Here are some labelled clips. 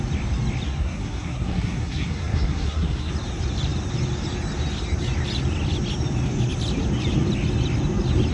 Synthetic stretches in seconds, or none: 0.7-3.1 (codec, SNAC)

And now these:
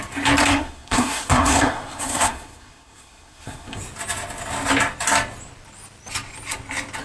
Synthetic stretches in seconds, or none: 0.4-3.8 (codec, SNAC)

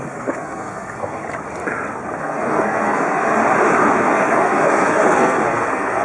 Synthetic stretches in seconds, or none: 0.0-1.2 (codec, SNAC); 2.2-3.4; 4.0-6.0

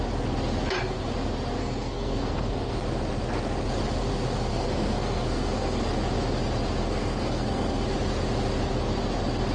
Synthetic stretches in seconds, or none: 1.6-2.8 (codec, SNAC); 4.5-5.8; 6.8-7.8

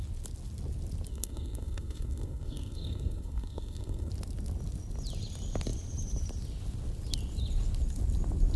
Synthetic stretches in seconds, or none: 1.1-4.1 (codec, SNAC)

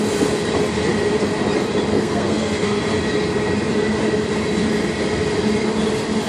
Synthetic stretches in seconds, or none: 1.9-2.8 (codec, SNAC)

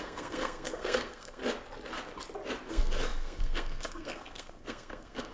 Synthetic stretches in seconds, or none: 0.0-1.4 (codec, SNAC); 2.7-5.3